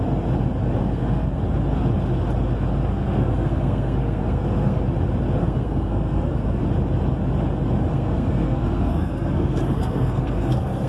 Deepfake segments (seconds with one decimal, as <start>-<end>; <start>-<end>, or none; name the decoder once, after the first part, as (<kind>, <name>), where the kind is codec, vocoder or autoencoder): 0.8-1.4 (codec, SNAC); 2.9-4.8; 5.4-6.6; 7.9-10.9